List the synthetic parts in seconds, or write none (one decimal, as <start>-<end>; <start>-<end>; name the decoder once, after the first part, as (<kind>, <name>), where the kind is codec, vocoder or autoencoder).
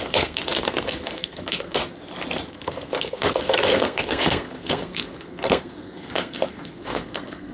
0.0-1.8 (codec, SNAC); 2.5-7.5